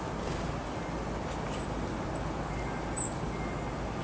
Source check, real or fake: real